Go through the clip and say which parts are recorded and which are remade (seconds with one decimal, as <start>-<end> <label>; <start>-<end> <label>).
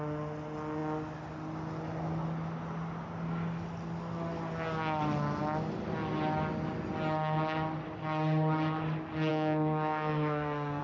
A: 0.0-9.3 recorded; 9.3-10.8 remade